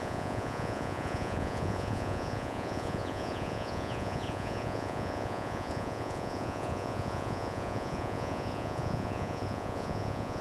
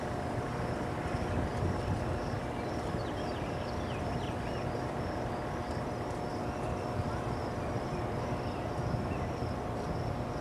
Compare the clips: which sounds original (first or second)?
second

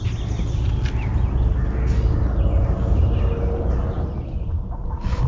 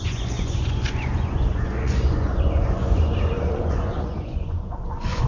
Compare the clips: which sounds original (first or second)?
first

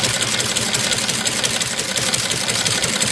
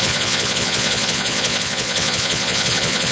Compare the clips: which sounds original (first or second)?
first